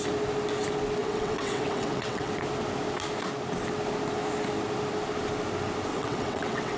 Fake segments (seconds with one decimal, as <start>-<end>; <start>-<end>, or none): 1.0-2.3; 5.9-6.8